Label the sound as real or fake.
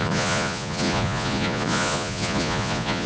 fake